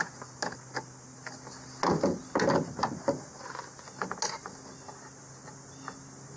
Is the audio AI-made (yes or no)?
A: no